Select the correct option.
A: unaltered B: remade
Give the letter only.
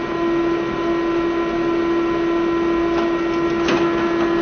A